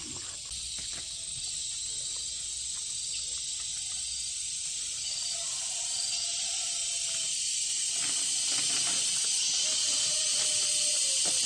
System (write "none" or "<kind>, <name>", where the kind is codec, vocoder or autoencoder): none